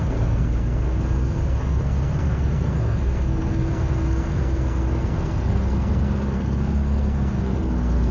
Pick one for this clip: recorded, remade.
remade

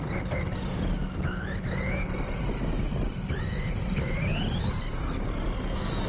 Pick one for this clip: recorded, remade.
recorded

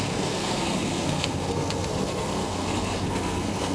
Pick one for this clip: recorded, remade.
remade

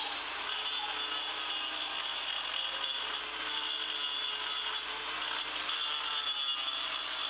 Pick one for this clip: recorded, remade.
recorded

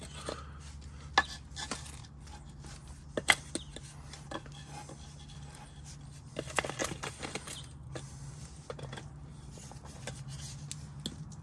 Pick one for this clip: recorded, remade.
recorded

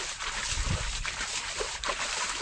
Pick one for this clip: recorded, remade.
recorded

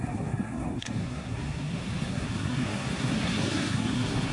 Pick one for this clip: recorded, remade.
remade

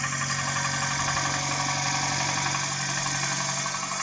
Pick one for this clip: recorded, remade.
recorded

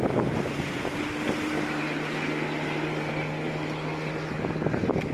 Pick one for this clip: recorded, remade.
recorded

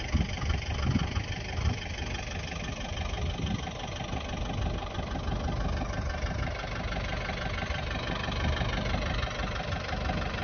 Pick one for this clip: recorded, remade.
recorded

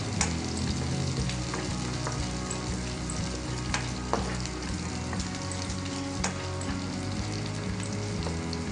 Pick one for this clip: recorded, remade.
recorded